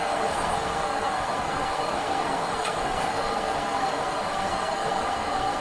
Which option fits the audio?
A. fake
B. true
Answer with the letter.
A